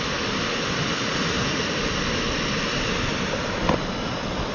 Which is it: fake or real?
real